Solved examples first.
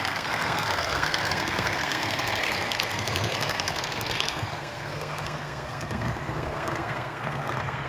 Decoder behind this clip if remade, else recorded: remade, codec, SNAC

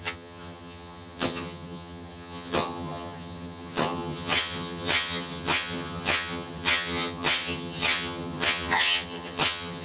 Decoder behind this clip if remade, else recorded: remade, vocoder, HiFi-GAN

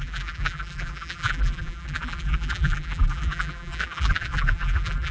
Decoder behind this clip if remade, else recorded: remade, vocoder, BigVGAN v2